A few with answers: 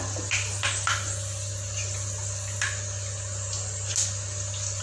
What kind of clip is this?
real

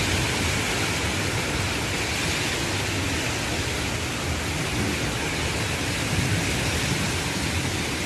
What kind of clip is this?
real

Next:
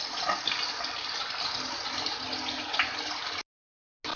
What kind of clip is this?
real